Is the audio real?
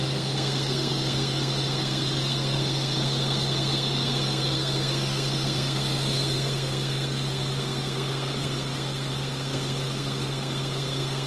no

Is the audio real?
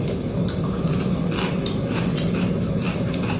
yes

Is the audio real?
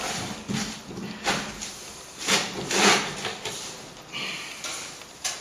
yes